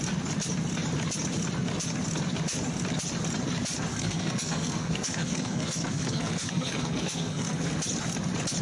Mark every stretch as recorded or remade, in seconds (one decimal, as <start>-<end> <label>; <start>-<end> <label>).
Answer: 0.0-3.9 recorded; 3.9-7.7 remade; 7.7-8.6 recorded